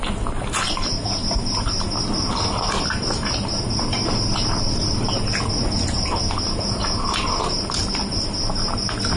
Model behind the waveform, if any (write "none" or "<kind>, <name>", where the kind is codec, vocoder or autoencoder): none